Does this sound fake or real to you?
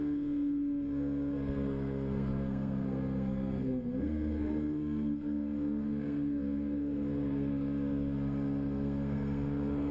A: fake